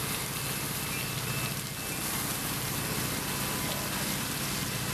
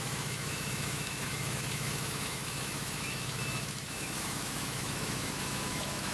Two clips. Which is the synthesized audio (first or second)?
second